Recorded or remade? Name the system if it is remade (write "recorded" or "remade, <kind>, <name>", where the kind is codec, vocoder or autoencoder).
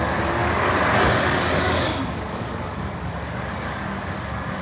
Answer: remade, codec, DAC